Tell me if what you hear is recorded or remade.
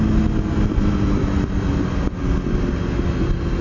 recorded